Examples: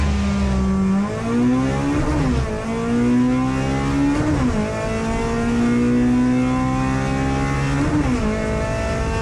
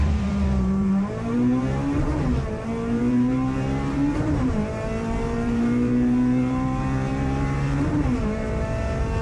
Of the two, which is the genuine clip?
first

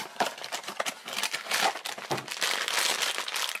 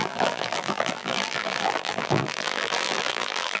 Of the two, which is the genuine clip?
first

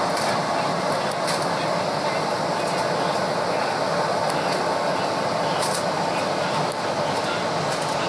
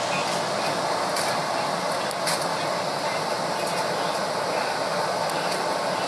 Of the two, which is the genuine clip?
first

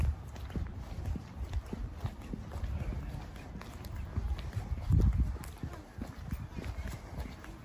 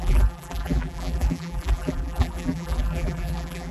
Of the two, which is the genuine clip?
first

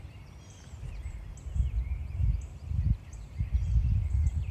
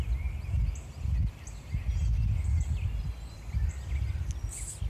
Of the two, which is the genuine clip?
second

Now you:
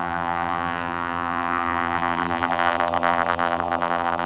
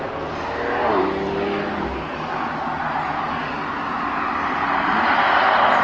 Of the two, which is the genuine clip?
second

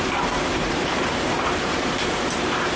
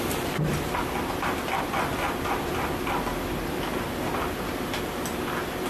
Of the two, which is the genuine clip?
second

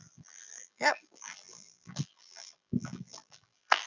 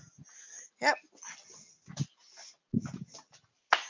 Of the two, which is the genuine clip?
second